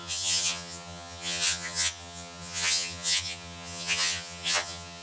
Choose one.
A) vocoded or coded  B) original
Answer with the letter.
A